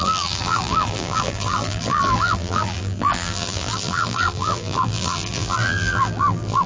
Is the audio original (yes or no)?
no